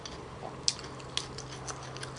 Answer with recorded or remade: recorded